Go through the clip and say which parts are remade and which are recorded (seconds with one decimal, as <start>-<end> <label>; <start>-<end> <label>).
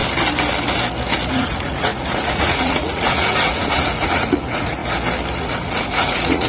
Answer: 0.0-1.3 recorded; 1.3-4.8 remade; 4.8-5.4 recorded; 5.4-6.5 remade